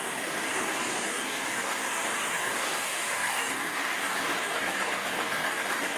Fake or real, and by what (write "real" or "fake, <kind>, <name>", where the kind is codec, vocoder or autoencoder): fake, codec, DAC